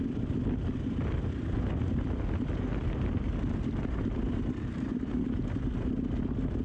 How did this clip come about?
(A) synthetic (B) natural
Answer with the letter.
B